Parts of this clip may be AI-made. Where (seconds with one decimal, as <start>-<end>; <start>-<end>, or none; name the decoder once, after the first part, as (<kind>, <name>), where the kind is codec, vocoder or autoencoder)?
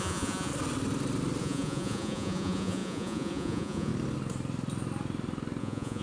0.0-0.5 (vocoder, Vocos); 1.4-3.9; 5.6-6.0